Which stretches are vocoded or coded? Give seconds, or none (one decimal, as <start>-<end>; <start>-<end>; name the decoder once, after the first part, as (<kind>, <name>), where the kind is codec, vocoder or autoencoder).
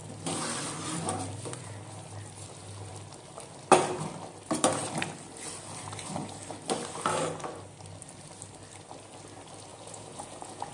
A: 9.7-10.7 (vocoder, Vocos)